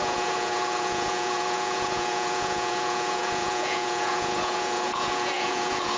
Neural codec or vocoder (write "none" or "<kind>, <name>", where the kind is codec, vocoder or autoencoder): vocoder, Vocos